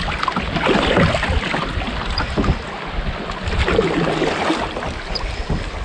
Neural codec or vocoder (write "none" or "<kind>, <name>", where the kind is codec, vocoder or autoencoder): none